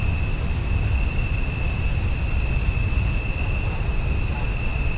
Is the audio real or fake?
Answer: real